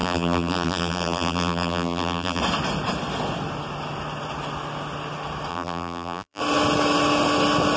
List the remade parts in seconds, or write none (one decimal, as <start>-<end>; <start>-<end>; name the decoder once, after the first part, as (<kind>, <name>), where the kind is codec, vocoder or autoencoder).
0.0-2.4 (vocoder, BigVGAN v2); 5.5-6.4